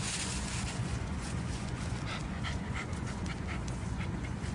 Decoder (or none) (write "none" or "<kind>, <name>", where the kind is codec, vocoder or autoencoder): vocoder, Vocos